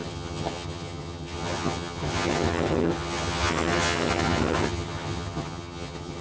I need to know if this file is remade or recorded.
remade